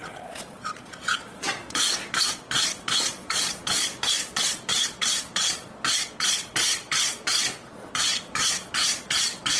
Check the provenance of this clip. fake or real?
fake